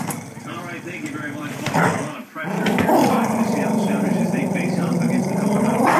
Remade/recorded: remade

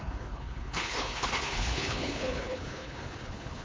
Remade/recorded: remade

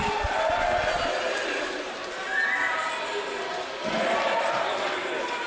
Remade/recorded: recorded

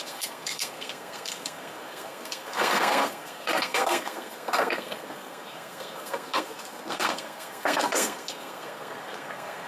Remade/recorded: remade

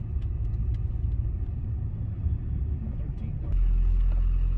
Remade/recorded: recorded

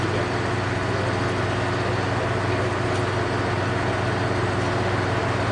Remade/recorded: recorded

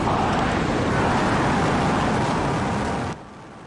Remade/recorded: recorded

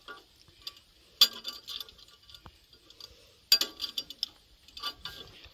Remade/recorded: recorded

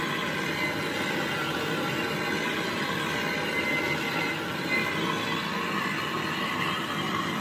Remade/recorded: recorded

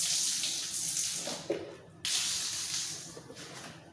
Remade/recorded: recorded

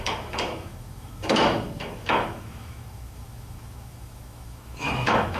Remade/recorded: remade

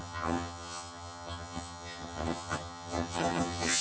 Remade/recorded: remade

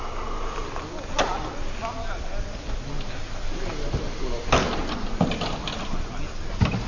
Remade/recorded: recorded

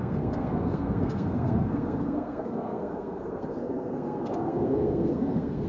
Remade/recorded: remade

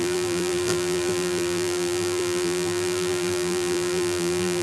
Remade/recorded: remade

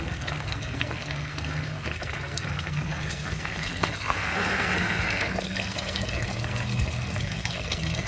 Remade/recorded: remade